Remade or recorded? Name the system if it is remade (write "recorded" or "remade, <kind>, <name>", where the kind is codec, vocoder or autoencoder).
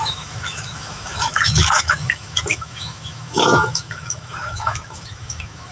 remade, autoencoder, DAC-VAE